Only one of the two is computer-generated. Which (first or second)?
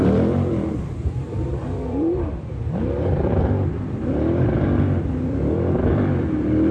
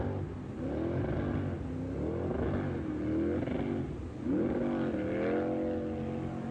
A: first